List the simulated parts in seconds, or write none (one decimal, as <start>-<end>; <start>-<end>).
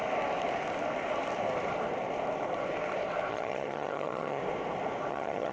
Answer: 3.3-4.4; 5.1-5.5